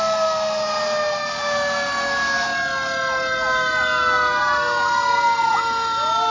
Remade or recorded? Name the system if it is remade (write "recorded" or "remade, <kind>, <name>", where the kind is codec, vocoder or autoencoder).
recorded